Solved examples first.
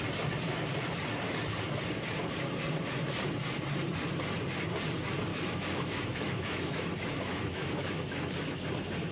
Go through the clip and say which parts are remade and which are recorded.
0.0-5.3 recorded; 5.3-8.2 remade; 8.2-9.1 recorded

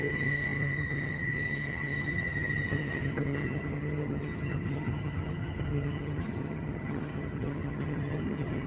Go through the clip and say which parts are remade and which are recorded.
0.0-8.7 remade

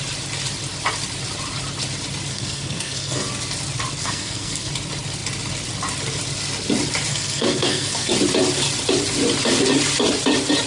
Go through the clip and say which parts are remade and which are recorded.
0.0-2.3 recorded; 2.3-3.3 remade; 3.3-4.0 recorded; 4.0-4.7 remade; 4.7-7.1 recorded; 7.1-8.1 remade; 8.1-10.7 recorded